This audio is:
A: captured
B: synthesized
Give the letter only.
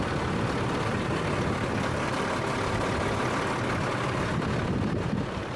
A